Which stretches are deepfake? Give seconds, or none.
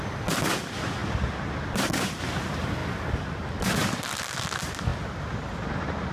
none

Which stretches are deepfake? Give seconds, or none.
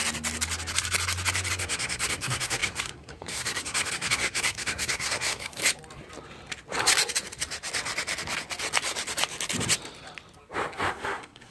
1.5-5.6; 10.9-11.5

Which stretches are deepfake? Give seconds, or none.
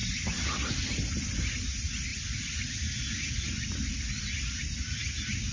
none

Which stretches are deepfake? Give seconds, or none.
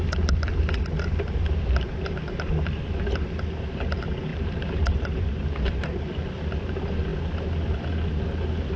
4.3-6.4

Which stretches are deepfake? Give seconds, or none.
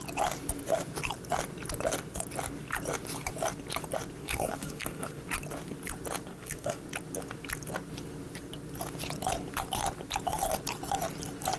4.2-5.2; 6.3-6.8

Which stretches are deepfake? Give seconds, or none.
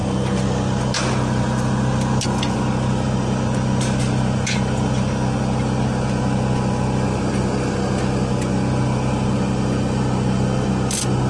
none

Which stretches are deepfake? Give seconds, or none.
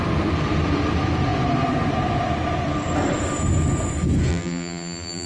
4.3-5.3